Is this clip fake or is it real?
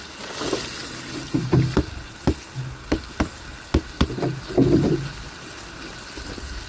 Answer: real